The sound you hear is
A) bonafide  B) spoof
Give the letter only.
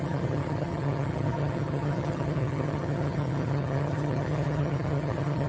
B